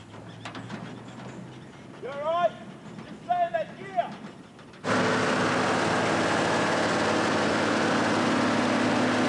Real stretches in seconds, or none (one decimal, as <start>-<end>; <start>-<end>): 0.0-9.3

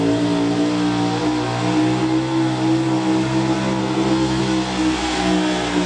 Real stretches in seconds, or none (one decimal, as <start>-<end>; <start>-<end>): 0.0-3.8; 4.4-5.0

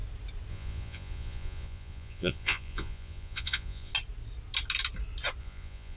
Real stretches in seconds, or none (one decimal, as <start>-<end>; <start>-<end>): 0.0-0.5; 3.9-5.4

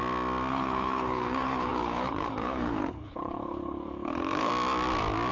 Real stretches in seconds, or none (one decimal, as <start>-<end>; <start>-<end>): 0.0-0.5; 4.5-5.3

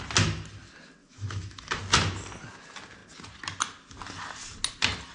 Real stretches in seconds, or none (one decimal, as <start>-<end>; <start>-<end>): 0.0-1.0; 1.8-5.1

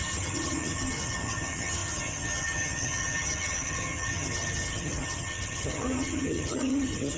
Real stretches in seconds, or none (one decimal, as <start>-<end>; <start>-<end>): none

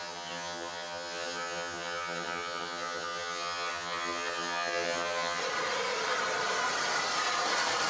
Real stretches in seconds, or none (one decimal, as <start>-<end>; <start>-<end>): 5.4-7.9

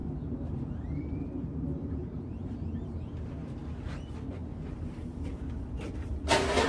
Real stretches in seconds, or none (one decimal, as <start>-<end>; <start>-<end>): 3.3-4.4; 5.4-6.7